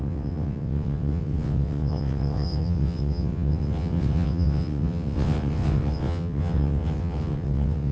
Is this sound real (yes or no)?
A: no